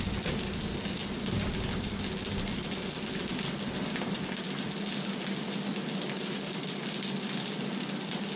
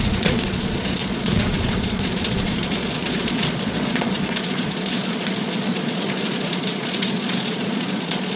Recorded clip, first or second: first